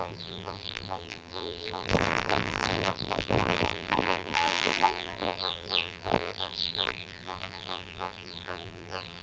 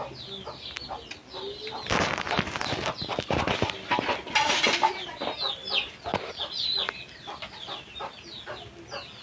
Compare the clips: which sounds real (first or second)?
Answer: second